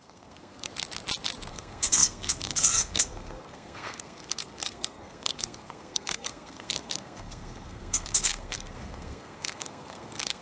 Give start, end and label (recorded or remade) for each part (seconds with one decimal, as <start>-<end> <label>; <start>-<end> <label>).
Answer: 0.0-0.7 remade; 0.7-1.5 recorded; 1.5-10.4 remade

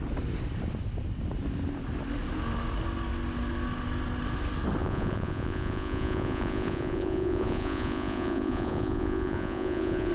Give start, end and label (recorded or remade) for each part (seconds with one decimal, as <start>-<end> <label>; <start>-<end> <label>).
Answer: 0.0-4.8 recorded; 4.8-10.1 remade

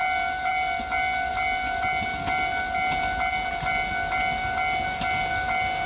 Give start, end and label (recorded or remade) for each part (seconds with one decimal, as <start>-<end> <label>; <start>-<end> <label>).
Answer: 0.0-5.9 recorded